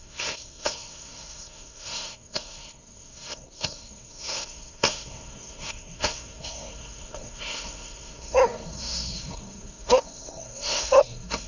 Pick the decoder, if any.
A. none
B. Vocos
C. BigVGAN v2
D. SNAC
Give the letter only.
D